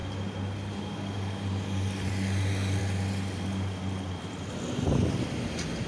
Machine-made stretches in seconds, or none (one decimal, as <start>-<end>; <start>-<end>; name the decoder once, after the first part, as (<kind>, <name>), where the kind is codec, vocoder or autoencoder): none